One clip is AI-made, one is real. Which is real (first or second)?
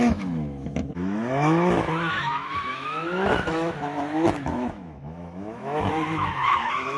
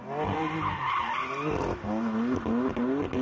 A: second